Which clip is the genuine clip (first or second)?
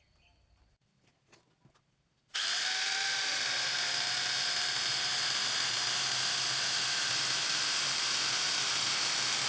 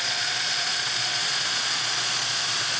first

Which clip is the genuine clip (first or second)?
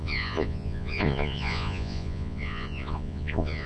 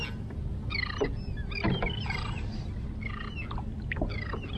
second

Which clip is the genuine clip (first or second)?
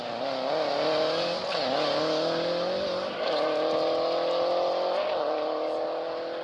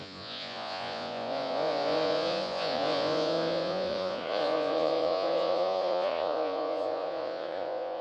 first